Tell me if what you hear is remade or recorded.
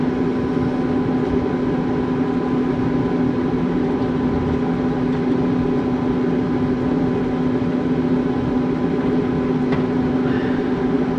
recorded